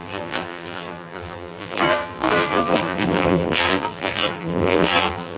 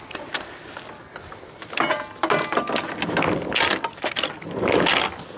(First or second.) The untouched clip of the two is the second